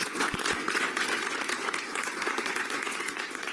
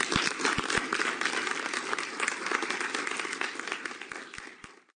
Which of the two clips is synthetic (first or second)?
first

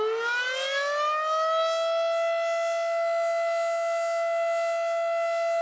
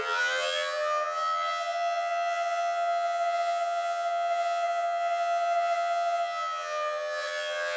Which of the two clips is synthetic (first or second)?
second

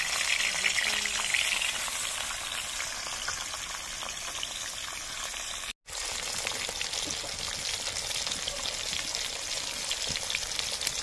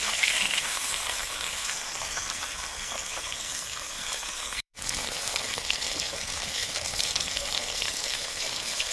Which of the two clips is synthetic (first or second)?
second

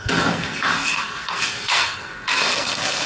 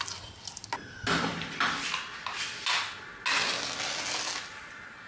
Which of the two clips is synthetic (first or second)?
first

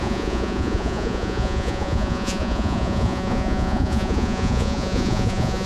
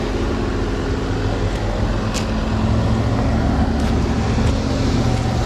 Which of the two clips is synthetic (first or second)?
first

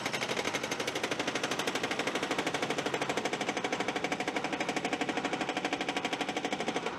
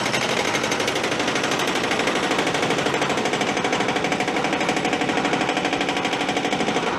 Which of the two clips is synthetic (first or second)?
first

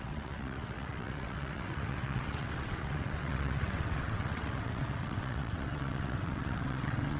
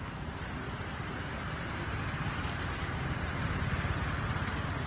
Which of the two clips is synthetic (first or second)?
first